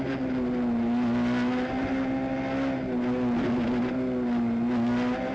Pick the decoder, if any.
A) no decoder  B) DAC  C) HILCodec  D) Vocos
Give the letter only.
A